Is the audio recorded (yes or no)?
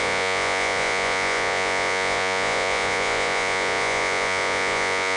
no